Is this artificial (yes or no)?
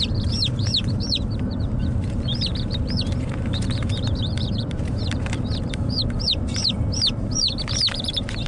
yes